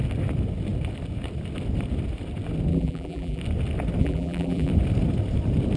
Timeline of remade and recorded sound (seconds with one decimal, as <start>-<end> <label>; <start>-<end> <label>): 0.0-2.7 recorded; 2.7-3.4 remade; 3.4-4.0 recorded; 4.0-4.7 remade; 4.7-5.8 recorded